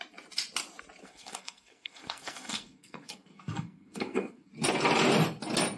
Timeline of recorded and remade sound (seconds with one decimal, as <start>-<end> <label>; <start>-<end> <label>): 0.0-1.0 recorded; 1.0-4.5 remade; 4.5-5.8 recorded